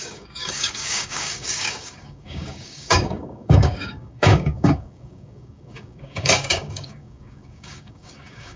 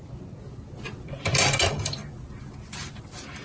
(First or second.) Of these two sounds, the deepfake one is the first